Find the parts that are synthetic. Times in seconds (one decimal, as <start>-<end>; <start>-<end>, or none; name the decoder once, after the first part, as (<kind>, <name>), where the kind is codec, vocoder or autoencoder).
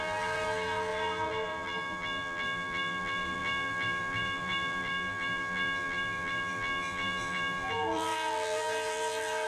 0.0-9.5 (vocoder, BigVGAN v2)